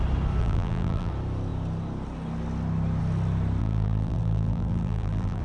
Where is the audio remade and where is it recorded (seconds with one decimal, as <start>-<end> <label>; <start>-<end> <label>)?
0.0-0.4 recorded; 0.4-1.1 remade; 1.1-3.6 recorded; 3.6-5.4 remade